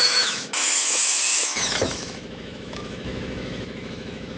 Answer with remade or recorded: remade